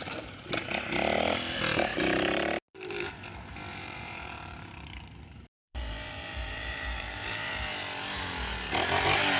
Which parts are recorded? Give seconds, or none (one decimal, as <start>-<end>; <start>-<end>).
0.0-1.9; 3.1-3.7; 7.5-9.4